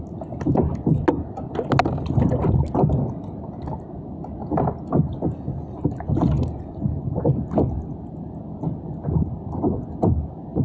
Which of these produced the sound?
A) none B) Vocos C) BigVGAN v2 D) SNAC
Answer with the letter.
A